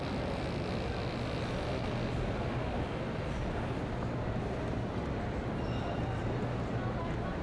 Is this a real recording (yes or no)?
yes